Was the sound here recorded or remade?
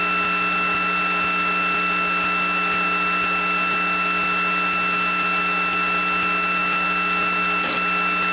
recorded